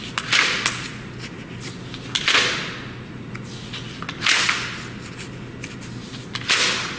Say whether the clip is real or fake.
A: real